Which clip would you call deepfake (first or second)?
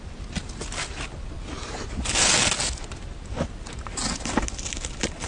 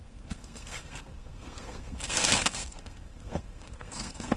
second